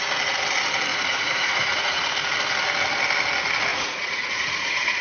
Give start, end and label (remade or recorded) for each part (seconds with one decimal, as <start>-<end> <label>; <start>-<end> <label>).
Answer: 0.0-0.9 recorded; 0.9-2.0 remade; 2.0-3.7 recorded; 3.7-5.0 remade